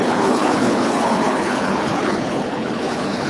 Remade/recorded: remade